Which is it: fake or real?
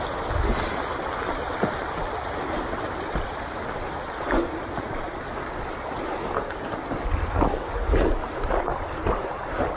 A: real